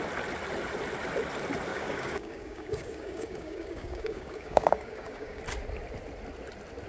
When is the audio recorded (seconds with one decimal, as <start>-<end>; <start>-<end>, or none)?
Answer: 0.0-1.7; 5.4-6.9